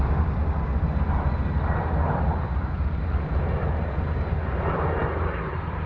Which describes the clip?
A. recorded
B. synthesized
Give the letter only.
A